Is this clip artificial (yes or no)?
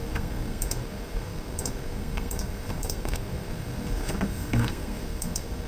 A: yes